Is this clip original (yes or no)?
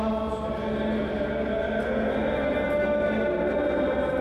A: yes